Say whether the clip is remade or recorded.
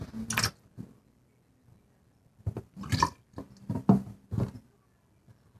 recorded